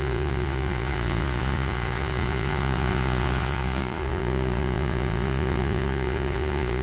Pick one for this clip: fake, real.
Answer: fake